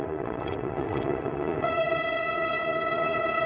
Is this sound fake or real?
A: fake